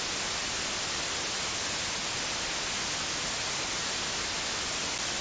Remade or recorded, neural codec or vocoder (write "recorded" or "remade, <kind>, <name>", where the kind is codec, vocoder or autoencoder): recorded